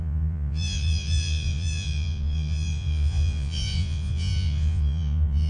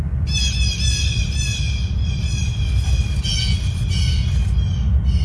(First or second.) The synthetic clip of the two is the first